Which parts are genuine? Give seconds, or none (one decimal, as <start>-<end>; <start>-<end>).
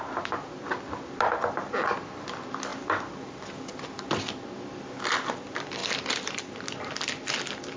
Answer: 0.0-5.8; 6.4-7.8